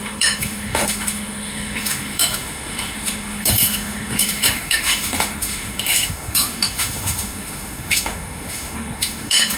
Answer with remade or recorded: remade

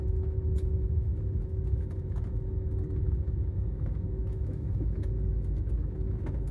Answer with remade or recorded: remade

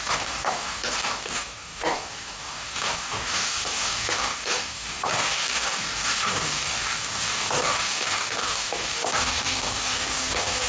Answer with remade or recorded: remade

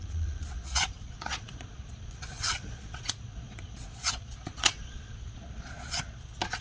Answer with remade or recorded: remade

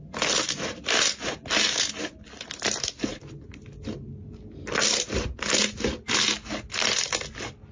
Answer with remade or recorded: recorded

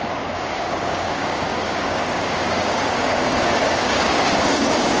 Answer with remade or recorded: remade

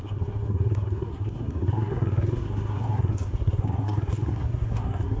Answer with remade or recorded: remade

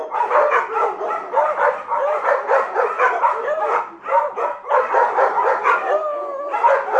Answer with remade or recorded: recorded